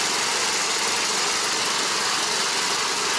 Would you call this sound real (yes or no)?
yes